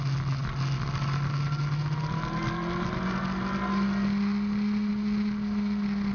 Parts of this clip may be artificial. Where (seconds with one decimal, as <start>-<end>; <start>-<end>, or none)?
none